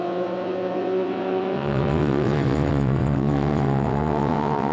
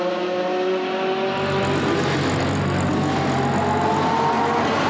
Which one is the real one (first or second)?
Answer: second